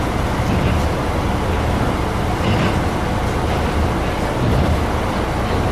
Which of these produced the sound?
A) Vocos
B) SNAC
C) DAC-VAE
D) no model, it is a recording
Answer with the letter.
D